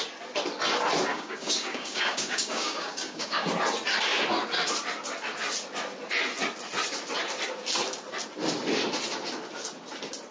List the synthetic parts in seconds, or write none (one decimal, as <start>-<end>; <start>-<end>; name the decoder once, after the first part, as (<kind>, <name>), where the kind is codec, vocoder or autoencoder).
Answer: 1.1-3.5 (codec, DAC)